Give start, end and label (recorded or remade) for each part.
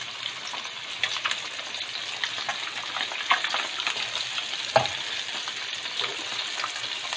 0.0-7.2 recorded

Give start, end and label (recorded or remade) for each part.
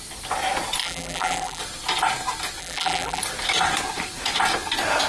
0.0-0.8 recorded; 0.8-1.6 remade; 1.6-2.6 recorded; 2.6-3.2 remade; 3.2-5.1 recorded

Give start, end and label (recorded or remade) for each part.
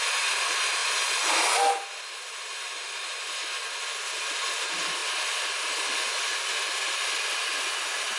0.0-8.2 recorded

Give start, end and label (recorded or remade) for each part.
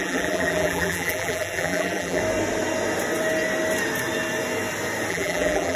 0.0-2.2 remade; 2.2-5.1 recorded; 5.1-5.8 remade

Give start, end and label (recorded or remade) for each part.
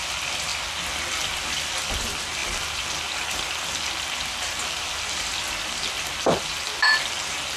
0.0-7.6 recorded